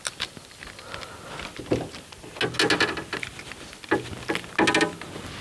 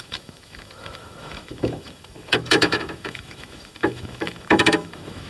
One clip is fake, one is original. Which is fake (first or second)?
second